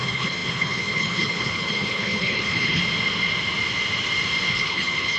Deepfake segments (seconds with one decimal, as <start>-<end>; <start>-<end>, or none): 0.0-2.8; 4.5-5.2